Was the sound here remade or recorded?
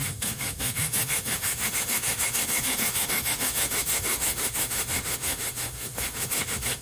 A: remade